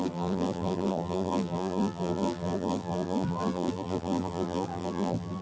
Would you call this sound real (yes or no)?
no